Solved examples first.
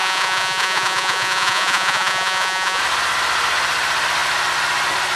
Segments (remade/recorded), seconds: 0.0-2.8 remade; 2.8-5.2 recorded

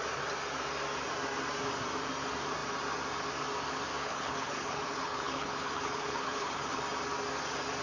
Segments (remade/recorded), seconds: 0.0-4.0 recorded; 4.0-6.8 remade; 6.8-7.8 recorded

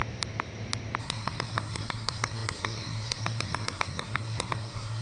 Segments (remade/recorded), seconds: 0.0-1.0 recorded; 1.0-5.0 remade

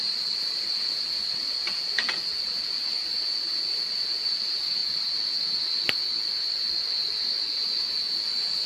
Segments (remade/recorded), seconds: 0.0-2.9 remade; 2.9-3.7 recorded; 3.7-4.8 remade; 4.8-8.7 recorded